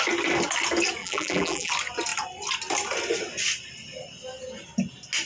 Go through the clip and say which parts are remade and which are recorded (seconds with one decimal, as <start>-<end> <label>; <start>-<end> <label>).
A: 0.0-1.0 recorded; 1.0-1.7 remade; 1.7-5.3 recorded